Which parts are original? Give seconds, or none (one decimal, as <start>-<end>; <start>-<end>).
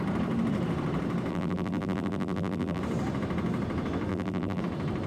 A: 0.0-1.3; 2.8-4.1; 4.6-5.1